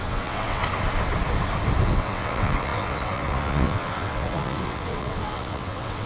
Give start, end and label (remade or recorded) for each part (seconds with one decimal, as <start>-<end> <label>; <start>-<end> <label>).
0.0-0.6 remade; 0.6-1.8 recorded; 1.8-6.1 remade